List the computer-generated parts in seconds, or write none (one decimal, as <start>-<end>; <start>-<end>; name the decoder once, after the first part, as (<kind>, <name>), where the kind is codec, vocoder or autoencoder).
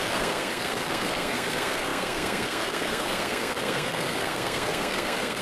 0.0-5.4 (codec, SNAC)